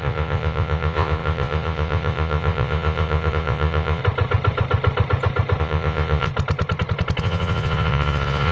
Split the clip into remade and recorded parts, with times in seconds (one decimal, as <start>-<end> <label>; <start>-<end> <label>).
0.0-4.0 remade; 4.0-5.6 recorded; 5.6-6.3 remade; 6.3-7.2 recorded; 7.2-8.5 remade